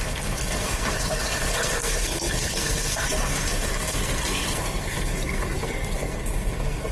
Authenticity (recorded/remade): remade